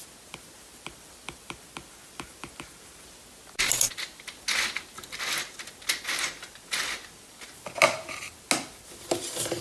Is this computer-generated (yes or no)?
no